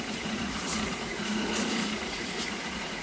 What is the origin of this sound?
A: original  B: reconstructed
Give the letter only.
B